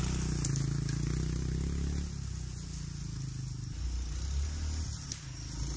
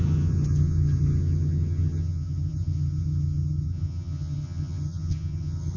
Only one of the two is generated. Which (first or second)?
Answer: second